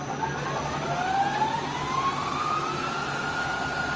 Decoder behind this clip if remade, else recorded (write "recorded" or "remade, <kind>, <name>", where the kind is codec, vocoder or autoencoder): recorded